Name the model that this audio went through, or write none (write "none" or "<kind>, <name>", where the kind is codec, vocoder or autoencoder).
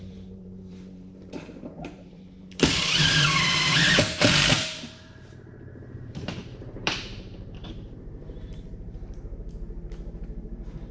vocoder, BigVGAN v2